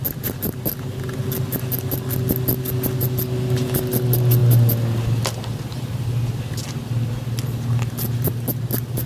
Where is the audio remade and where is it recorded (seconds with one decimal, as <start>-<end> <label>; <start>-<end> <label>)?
0.0-9.1 recorded